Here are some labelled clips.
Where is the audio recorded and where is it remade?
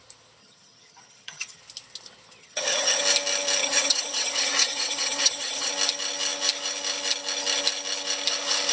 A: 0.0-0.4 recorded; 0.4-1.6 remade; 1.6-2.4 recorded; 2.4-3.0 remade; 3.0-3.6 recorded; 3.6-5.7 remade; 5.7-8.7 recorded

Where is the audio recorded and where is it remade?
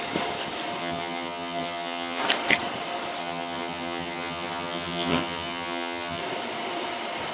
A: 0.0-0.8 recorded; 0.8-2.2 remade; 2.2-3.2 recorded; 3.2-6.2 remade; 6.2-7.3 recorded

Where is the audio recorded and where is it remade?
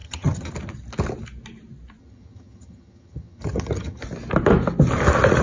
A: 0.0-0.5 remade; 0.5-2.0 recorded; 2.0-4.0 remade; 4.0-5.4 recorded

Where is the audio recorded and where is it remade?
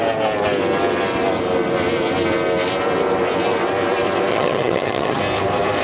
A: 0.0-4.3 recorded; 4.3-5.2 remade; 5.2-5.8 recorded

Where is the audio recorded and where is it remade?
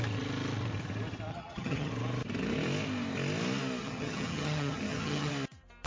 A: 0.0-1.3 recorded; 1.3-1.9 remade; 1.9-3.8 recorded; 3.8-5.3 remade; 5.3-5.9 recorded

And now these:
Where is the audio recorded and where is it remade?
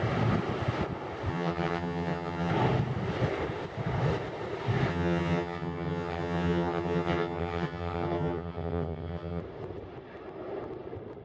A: 0.0-1.3 recorded; 1.3-2.5 remade; 2.5-4.9 recorded; 4.9-9.4 remade; 9.4-11.2 recorded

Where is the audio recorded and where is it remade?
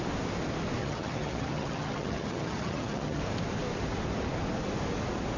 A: 0.0-0.8 recorded; 0.8-3.2 remade; 3.2-5.4 recorded